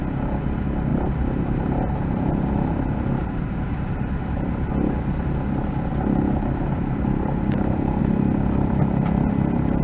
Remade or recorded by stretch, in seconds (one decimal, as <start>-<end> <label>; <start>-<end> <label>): 0.0-0.9 recorded; 0.9-4.7 remade; 4.7-5.9 recorded; 5.9-8.0 remade; 8.0-9.8 recorded